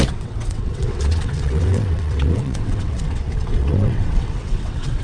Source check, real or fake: fake